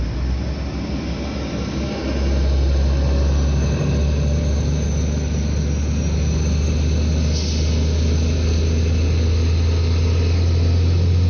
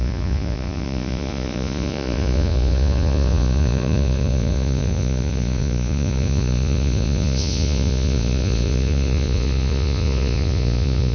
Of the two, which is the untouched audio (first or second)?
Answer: first